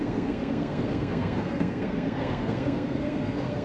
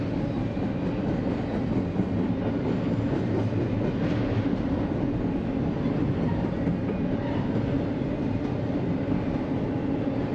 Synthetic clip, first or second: first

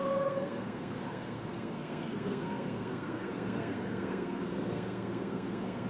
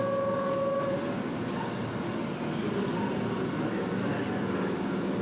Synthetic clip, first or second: first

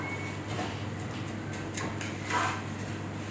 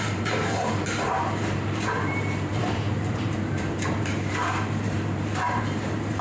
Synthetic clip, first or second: second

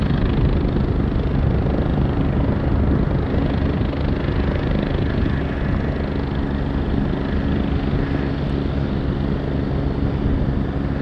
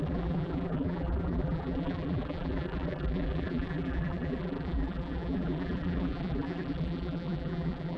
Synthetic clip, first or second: second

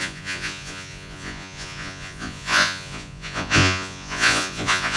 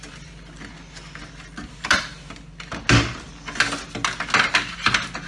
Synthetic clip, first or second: first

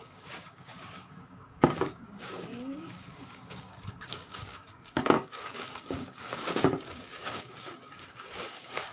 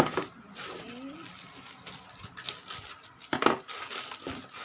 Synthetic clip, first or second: first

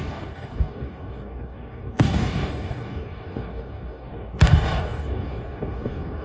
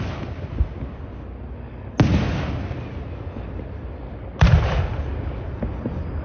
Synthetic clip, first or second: first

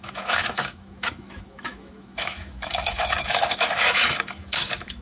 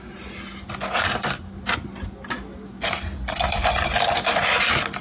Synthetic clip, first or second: first